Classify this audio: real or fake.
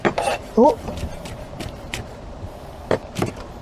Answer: fake